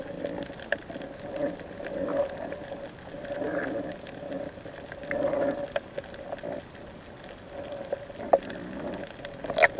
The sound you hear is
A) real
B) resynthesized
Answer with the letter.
A